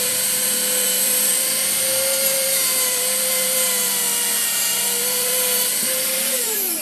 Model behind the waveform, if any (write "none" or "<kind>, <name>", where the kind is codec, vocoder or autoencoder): vocoder, BigVGAN v2